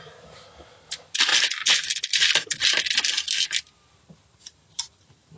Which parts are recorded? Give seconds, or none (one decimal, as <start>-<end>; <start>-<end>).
0.0-5.4